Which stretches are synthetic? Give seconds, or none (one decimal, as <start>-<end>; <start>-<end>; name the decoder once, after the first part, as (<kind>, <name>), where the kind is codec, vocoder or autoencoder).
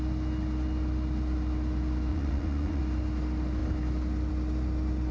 2.1-2.8 (vocoder, Vocos)